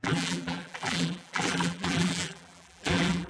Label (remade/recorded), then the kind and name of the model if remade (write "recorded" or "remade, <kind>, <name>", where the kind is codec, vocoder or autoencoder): remade, vocoder, BigVGAN v2